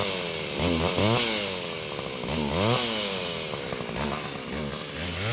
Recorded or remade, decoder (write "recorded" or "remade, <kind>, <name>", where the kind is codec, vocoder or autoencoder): recorded